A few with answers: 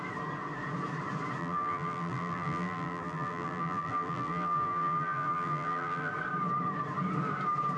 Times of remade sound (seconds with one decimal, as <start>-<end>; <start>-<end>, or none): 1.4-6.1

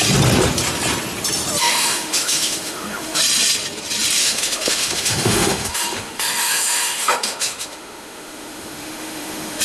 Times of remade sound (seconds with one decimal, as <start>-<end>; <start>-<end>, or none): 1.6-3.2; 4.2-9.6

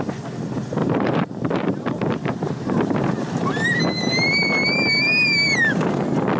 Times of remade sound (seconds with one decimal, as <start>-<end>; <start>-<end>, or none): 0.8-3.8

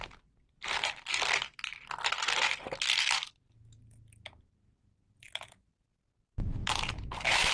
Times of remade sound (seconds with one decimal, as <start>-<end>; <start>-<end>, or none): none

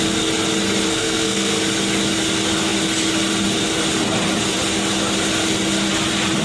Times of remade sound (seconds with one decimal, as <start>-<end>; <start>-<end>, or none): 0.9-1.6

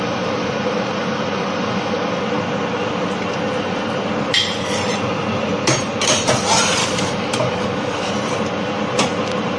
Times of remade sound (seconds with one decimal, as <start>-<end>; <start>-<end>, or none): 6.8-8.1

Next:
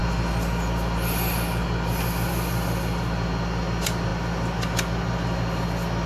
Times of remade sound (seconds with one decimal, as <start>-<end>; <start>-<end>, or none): none